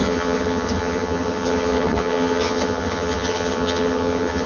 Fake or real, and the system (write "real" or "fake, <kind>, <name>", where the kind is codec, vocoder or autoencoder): fake, vocoder, HiFi-GAN